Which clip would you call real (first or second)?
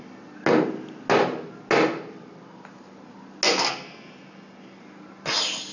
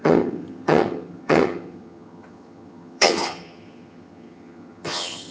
first